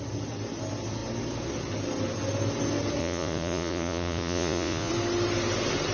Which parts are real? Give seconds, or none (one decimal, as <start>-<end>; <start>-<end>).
0.0-3.0; 4.9-5.9